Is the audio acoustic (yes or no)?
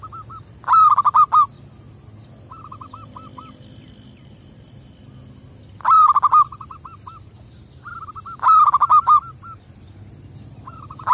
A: no